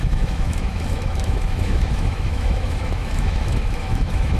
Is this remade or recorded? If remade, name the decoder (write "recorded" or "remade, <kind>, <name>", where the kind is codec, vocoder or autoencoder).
remade, autoencoder, DAC-VAE